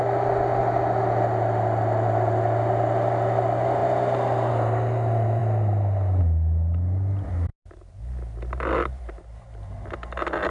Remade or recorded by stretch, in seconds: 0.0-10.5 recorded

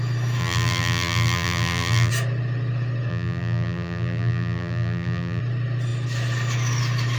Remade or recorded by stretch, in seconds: 0.0-0.4 recorded; 0.4-2.1 remade; 2.1-3.1 recorded; 3.1-5.4 remade; 5.4-7.2 recorded

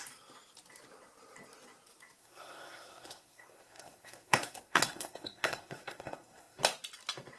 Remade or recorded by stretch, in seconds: 0.0-2.2 recorded; 2.2-6.6 remade; 6.6-7.4 recorded

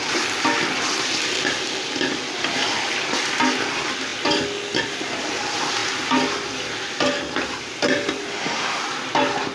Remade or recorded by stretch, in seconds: 0.0-8.3 recorded; 8.3-8.8 remade; 8.8-9.5 recorded

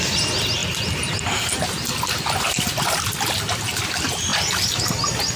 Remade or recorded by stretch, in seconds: 0.0-5.4 recorded

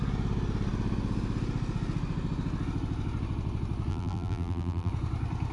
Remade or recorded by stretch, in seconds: 0.0-3.9 recorded; 3.9-4.9 remade; 4.9-5.5 recorded